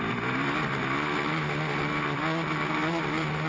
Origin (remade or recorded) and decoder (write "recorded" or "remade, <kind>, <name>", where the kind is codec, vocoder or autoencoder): recorded